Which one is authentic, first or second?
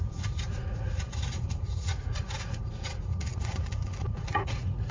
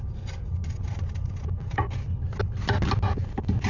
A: second